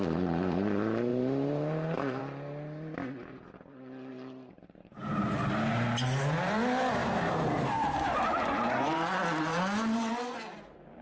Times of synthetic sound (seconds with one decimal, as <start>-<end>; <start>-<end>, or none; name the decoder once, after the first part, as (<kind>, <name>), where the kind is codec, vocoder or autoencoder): 1.1-2.2 (vocoder, BigVGAN v2); 4.1-5.3; 7.0-9.6